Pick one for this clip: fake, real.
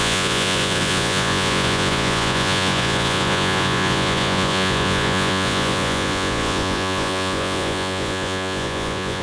fake